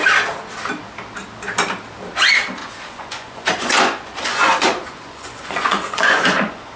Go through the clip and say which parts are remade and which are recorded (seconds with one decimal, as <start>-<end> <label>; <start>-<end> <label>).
0.0-2.6 recorded; 2.6-6.8 remade